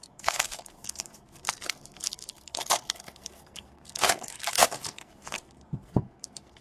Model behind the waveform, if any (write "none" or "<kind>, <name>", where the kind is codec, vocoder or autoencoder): codec, SNAC